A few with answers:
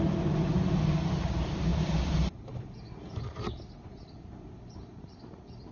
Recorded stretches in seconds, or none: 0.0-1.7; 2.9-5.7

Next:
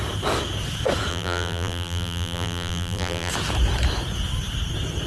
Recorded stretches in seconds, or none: 0.0-1.1; 3.3-5.1

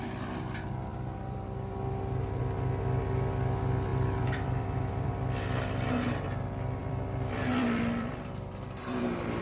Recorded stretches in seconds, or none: 0.0-3.9; 5.1-6.8; 9.0-9.4